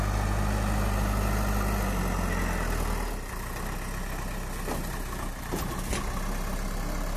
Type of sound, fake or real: real